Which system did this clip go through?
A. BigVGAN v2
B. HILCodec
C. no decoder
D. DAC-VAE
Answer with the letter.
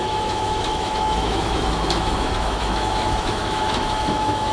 D